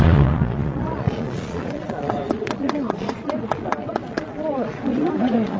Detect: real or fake fake